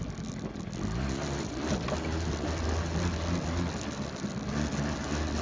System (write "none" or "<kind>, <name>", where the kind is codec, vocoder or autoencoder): none